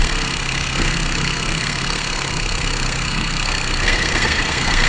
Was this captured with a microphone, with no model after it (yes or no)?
no